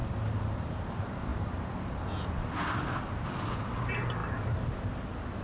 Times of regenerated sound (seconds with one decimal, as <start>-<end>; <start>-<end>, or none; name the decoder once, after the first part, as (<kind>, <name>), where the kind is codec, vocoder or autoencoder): none